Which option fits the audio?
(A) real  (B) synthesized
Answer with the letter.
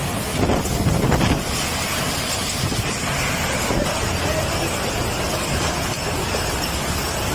A